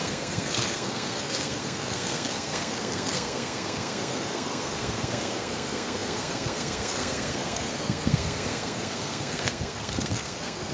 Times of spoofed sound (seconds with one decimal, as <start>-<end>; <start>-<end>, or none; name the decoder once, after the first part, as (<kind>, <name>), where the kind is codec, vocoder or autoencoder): 0.0-10.7 (codec, SNAC)